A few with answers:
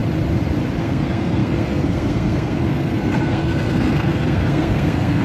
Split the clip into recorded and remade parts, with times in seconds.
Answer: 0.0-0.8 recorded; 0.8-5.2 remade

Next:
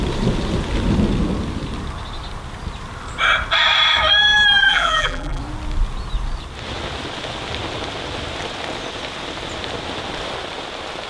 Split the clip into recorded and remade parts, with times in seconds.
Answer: 0.0-4.6 recorded; 4.6-5.4 remade; 5.4-11.1 recorded

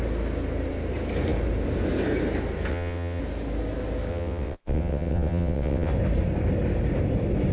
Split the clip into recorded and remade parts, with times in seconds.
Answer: 0.0-2.7 recorded; 2.7-3.2 remade; 3.2-4.1 recorded; 4.1-5.9 remade; 5.9-7.5 recorded

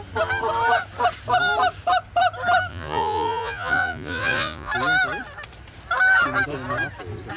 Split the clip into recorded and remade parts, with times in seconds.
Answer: 0.0-2.7 recorded; 2.7-4.7 remade; 4.7-7.4 recorded

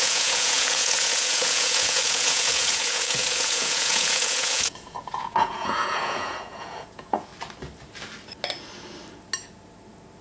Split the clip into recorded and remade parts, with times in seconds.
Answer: 0.0-7.3 remade; 7.3-10.2 recorded